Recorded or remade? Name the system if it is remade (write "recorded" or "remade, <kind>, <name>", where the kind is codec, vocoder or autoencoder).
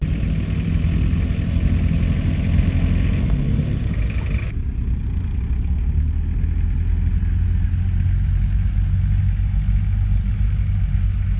recorded